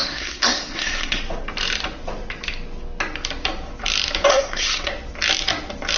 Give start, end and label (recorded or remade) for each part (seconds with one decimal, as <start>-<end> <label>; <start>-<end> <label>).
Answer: 0.0-1.2 remade; 1.2-4.3 recorded; 4.3-4.9 remade; 4.9-6.0 recorded